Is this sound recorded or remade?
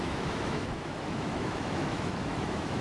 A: remade